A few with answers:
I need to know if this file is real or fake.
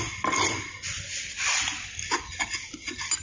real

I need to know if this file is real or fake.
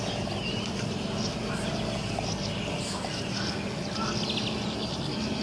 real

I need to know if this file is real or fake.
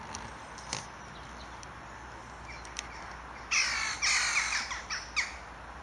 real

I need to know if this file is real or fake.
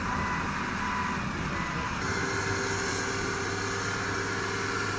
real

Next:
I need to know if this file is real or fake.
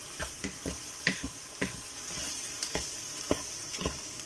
real